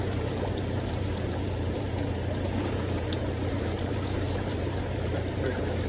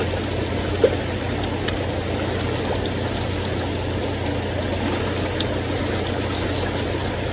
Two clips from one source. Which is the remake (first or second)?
first